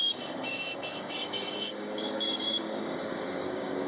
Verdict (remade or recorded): remade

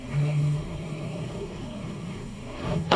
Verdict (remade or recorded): remade